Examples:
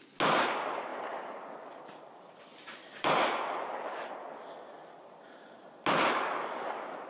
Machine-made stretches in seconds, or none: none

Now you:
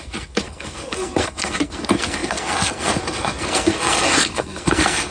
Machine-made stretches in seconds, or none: 0.0-5.1 (codec, SNAC)

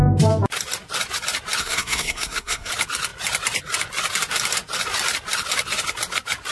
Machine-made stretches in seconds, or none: 1.6-2.7 (codec, SNAC)

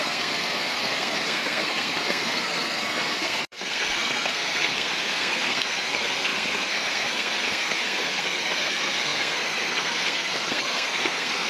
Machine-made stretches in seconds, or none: 0.0-11.5 (codec, SNAC)

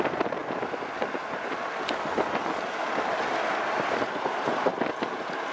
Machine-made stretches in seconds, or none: none

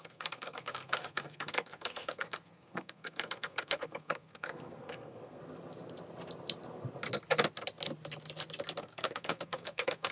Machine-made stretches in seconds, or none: 0.0-5.4 (codec, SNAC); 8.8-10.1

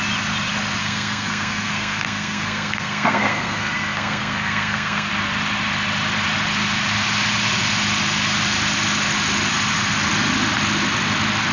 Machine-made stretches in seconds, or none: 0.8-5.1 (codec, SNAC)